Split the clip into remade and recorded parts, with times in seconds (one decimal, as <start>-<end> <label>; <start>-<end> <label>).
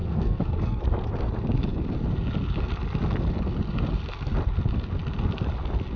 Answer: 0.0-0.8 remade; 0.8-6.0 recorded